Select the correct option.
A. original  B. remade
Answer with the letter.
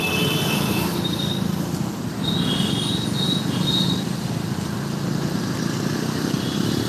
A